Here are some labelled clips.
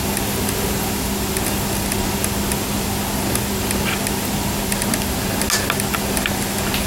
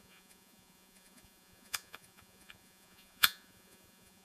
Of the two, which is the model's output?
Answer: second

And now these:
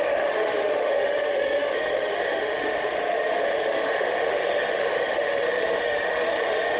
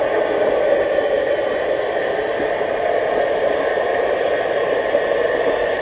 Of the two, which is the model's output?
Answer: first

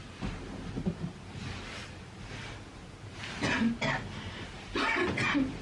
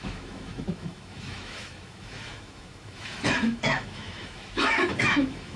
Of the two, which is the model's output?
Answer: second